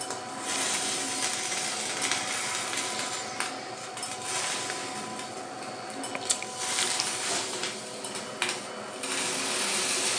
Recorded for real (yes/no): yes